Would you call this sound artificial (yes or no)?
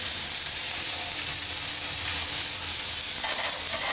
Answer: no